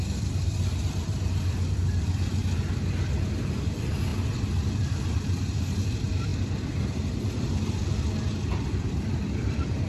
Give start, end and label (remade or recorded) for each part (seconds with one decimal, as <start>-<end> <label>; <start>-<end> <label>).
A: 0.0-2.4 remade; 2.4-3.5 recorded; 3.5-4.1 remade; 4.1-5.6 recorded; 5.6-9.9 remade